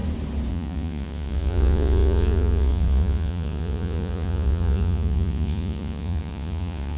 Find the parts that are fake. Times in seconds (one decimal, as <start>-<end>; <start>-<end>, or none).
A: 0.5-7.0